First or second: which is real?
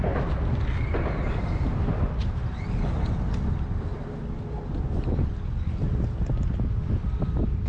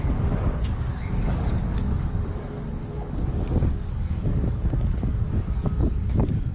first